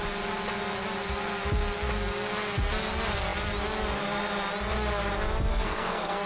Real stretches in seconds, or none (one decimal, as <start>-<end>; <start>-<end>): 0.0-5.5